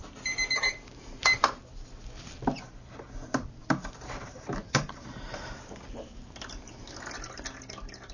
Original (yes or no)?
yes